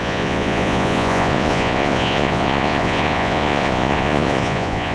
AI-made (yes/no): yes